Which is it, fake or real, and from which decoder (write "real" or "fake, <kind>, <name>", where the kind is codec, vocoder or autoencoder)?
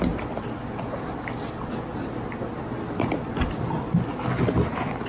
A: real